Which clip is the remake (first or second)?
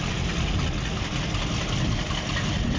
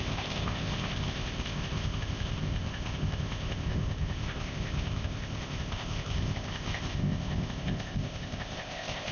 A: second